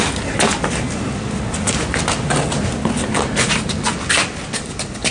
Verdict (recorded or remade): recorded